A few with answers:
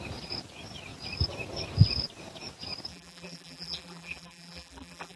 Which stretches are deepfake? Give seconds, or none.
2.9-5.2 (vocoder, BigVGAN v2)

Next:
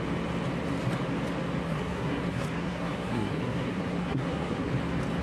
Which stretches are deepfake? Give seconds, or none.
1.6-4.7 (codec, SNAC)

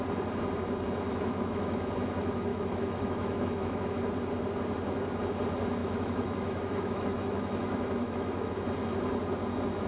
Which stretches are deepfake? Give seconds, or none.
1.1-1.9 (autoencoder, DAC-VAE); 2.5-3.8; 5.8-8.5

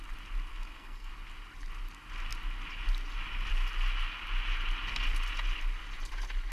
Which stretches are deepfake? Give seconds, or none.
0.5-1.1 (codec, SNAC)